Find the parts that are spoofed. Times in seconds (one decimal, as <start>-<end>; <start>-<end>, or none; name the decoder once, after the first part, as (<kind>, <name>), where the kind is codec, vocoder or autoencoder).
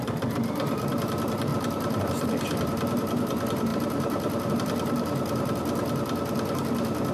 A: 0.0-5.8 (vocoder, BigVGAN v2); 6.5-7.1